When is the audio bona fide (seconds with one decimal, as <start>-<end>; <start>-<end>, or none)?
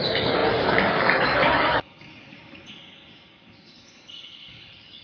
none